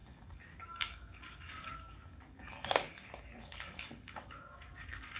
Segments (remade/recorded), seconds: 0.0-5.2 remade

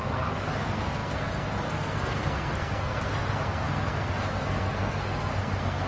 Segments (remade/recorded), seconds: 0.0-5.9 remade